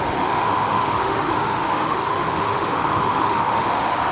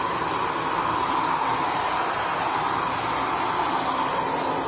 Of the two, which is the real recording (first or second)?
second